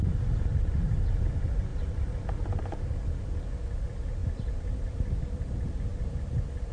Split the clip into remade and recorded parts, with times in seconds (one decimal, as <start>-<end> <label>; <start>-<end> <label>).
0.0-6.7 recorded